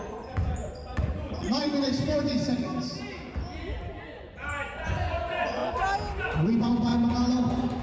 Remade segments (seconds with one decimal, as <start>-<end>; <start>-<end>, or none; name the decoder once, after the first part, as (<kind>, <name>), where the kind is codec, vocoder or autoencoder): 0.0-2.7 (vocoder, Vocos); 4.0-5.6; 6.2-6.9

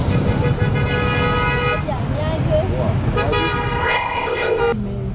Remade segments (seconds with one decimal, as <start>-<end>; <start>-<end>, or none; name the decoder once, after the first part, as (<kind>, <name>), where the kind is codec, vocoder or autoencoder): 3.8-4.6 (codec, ZipCodec)

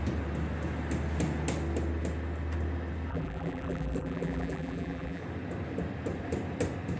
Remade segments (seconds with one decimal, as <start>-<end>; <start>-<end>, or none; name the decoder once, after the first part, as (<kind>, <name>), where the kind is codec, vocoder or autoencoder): 3.1-5.2 (vocoder, BigVGAN v2)

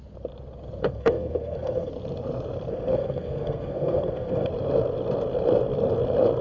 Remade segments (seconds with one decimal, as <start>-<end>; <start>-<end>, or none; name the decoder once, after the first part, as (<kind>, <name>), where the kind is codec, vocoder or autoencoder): 0.8-1.9 (codec, SNAC); 2.7-4.5

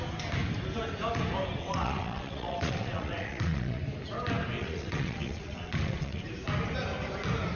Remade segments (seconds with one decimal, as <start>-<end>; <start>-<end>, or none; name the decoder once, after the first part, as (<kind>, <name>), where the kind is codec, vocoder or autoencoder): 1.6-3.8 (vocoder, WaveNeXt); 4.6-6.2

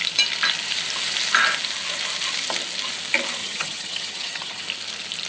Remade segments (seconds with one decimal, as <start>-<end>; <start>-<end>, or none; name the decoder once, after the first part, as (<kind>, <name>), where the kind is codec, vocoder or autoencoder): 3.4-4.6 (vocoder, HiFi-GAN)

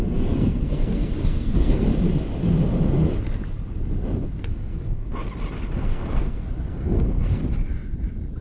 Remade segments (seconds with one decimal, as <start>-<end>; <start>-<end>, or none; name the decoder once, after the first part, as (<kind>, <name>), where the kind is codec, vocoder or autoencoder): 0.0-1.9 (codec, SNAC); 4.4-5.1; 5.8-7.4

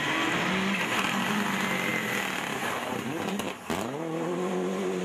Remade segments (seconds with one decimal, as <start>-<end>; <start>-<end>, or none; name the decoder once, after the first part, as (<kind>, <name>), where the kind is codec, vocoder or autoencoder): none